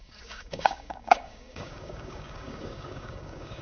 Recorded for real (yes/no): no